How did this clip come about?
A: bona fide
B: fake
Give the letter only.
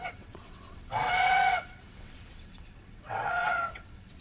B